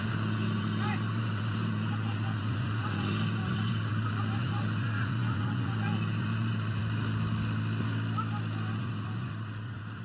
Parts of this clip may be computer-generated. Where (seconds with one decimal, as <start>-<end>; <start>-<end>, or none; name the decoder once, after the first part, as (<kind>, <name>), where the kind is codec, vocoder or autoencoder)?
0.0-6.8 (vocoder, Vocos); 8.7-10.0